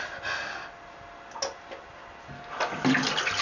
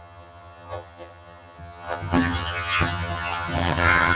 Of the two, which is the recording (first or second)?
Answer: first